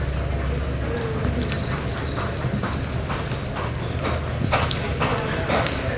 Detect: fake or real real